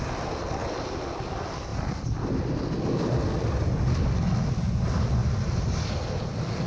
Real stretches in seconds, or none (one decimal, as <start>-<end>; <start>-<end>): 0.0-6.7